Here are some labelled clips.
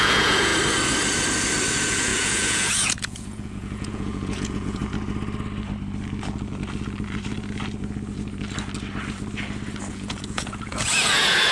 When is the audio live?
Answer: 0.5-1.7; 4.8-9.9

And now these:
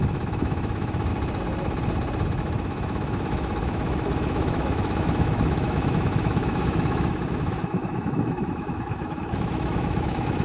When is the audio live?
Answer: 1.1-2.4

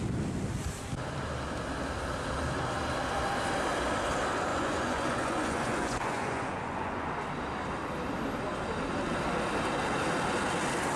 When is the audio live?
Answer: 0.0-4.5; 7.1-11.0

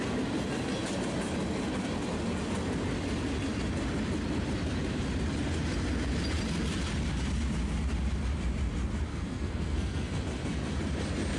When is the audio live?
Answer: 0.0-9.1; 10.2-11.4

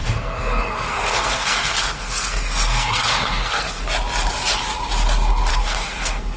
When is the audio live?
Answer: 3.8-5.5

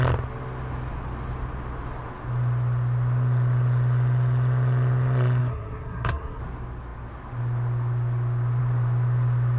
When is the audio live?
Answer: 0.0-5.4; 6.4-9.6

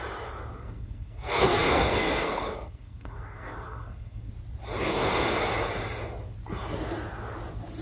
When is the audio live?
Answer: 0.0-0.6; 4.3-7.8